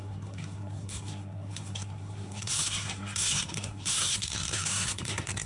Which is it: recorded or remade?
remade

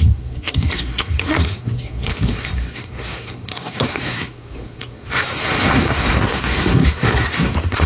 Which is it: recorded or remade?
remade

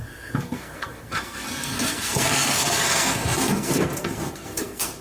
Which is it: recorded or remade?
remade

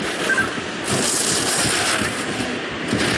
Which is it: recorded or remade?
recorded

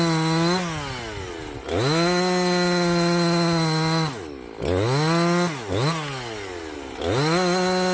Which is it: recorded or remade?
recorded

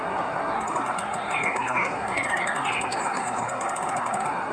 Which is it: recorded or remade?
remade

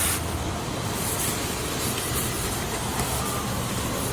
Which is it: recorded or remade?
recorded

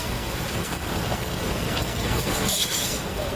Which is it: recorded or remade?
remade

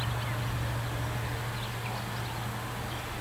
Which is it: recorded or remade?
recorded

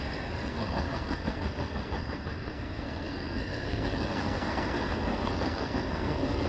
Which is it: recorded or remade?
remade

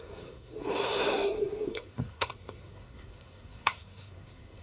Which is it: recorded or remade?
remade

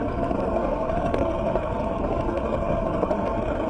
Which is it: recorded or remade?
remade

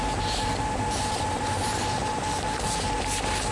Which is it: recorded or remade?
recorded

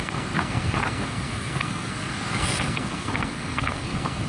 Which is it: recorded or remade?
remade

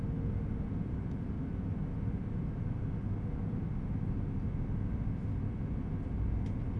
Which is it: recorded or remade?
recorded